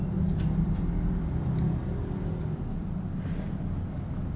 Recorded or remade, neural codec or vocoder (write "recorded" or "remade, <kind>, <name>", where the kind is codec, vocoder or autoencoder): recorded